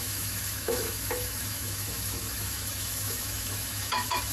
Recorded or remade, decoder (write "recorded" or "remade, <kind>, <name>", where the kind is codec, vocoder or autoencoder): remade, autoencoder, DAC-VAE